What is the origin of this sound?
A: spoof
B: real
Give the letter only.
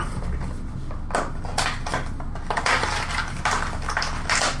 B